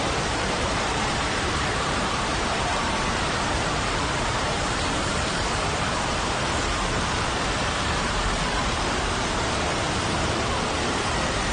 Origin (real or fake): fake